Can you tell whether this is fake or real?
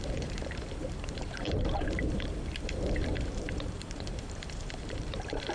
fake